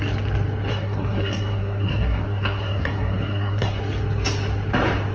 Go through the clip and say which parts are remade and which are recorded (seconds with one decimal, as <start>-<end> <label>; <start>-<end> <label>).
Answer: 0.0-0.7 recorded; 0.7-3.8 remade; 3.8-5.1 recorded